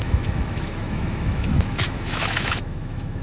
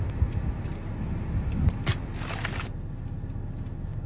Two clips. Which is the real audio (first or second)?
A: second